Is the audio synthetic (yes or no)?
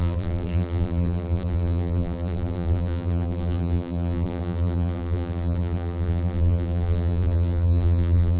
yes